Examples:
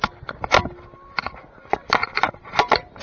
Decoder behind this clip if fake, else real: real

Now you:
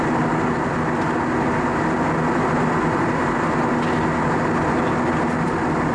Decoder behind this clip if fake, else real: real